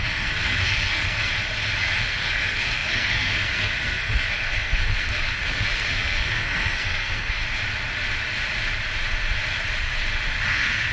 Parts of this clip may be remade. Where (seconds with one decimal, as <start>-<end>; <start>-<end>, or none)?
0.0-1.3; 1.8-7.4; 10.5-10.9